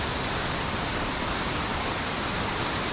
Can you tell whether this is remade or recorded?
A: remade